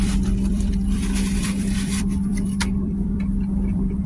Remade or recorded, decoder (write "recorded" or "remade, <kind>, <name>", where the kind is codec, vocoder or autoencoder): remade, vocoder, BigVGAN v2